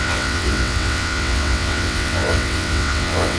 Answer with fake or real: fake